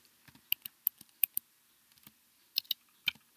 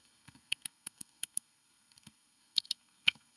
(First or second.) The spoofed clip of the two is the second